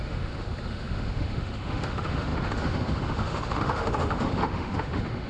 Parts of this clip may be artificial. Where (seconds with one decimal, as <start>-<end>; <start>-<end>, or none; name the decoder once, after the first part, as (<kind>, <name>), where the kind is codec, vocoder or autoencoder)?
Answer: 0.0-5.3 (autoencoder, DAC-VAE)